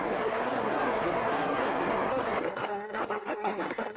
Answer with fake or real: fake